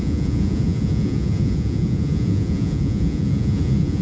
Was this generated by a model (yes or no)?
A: yes